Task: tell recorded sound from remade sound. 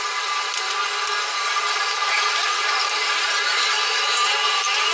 recorded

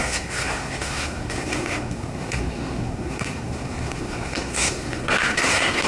remade